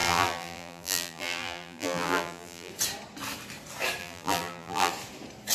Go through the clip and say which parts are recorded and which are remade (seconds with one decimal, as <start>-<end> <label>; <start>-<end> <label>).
0.0-2.7 remade; 2.7-4.0 recorded; 4.0-4.9 remade; 4.9-5.5 recorded